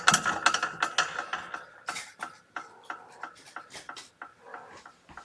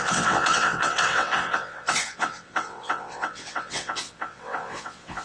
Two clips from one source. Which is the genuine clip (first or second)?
first